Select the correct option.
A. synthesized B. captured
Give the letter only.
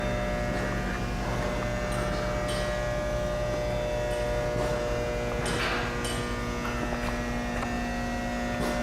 B